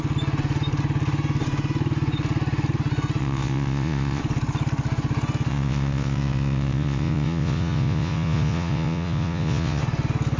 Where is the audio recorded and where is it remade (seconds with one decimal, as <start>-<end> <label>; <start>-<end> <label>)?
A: 0.0-3.2 recorded; 3.2-4.2 remade; 4.2-5.5 recorded; 5.5-9.8 remade; 9.8-10.4 recorded